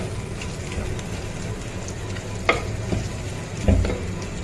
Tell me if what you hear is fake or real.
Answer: real